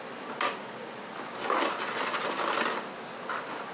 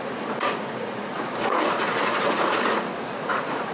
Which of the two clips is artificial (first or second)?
second